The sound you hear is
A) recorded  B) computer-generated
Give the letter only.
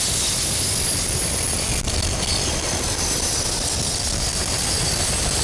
A